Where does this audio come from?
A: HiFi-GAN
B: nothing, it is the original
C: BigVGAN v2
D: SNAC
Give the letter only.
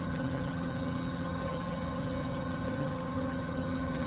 A